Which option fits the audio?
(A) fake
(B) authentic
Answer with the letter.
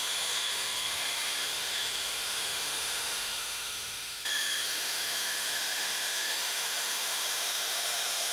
A